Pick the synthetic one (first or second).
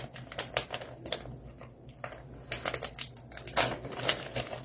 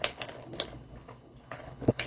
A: second